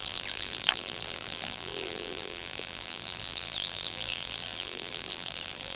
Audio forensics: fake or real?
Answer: fake